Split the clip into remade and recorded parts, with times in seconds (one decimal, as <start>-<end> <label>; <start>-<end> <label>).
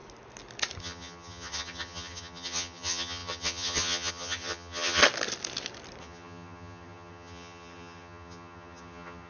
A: 0.0-0.8 recorded; 0.8-5.0 remade; 5.0-6.0 recorded; 6.0-9.3 remade